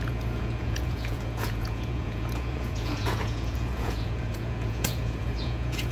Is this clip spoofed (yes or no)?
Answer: yes